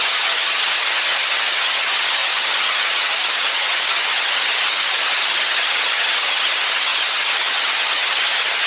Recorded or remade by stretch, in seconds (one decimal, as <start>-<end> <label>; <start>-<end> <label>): 0.0-8.7 remade